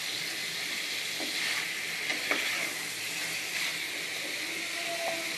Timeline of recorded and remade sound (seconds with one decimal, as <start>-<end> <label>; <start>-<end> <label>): 0.0-5.4 recorded